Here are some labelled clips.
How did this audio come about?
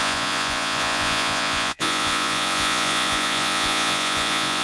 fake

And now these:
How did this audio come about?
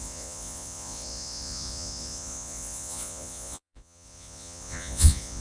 fake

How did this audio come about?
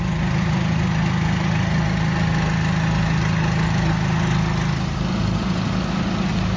real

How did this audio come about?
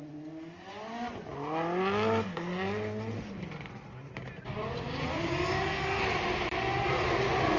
real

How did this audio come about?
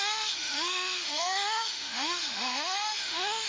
fake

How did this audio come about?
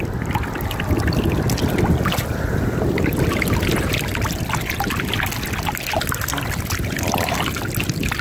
real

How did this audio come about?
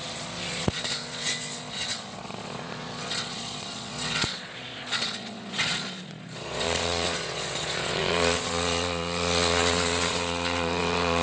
fake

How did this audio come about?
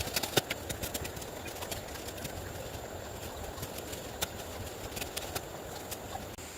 real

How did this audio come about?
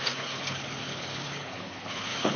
fake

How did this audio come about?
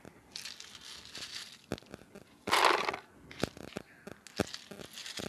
real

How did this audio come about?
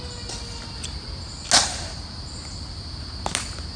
real